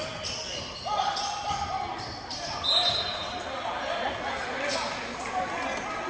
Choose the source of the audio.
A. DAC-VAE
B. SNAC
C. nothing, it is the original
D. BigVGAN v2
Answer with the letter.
C